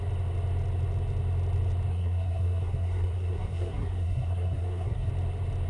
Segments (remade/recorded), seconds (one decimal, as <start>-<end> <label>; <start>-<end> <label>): 0.0-1.9 recorded; 1.9-5.1 remade; 5.1-5.7 recorded